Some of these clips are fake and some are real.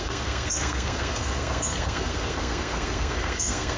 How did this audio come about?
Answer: fake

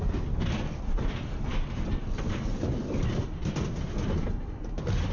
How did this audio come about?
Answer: real